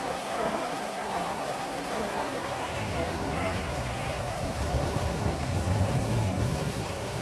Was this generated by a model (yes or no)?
yes